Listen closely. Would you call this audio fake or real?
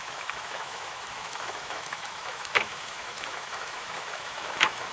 fake